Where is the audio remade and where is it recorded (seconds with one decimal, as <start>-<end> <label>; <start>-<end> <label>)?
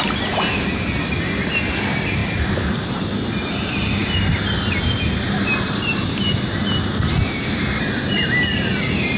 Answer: 0.0-9.2 recorded